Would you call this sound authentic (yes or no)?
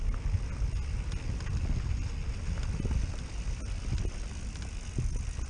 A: yes